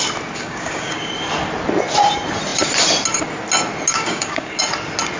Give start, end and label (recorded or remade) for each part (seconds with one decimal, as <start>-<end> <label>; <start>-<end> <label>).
0.0-0.4 recorded; 0.4-1.1 remade; 1.1-3.9 recorded; 3.9-4.6 remade; 4.6-5.2 recorded